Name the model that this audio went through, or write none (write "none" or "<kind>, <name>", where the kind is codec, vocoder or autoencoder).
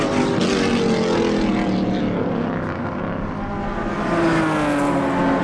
none